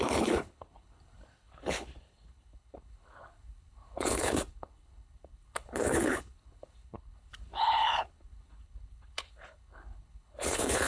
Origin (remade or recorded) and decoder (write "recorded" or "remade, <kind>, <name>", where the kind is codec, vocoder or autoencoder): remade, codec, HILCodec